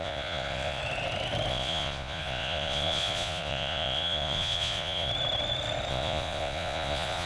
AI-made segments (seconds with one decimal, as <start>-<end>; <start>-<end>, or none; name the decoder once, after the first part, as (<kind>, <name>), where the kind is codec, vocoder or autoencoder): 0.0-0.8 (vocoder, Vocos); 1.5-5.1; 5.9-7.3